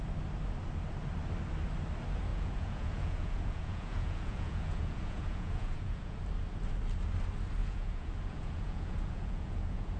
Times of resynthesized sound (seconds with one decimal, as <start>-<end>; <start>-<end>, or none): 2.3-6.2; 7.6-10.0